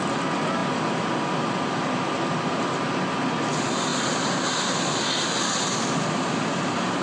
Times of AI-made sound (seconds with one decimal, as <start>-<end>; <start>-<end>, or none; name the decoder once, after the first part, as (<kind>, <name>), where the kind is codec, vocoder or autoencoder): none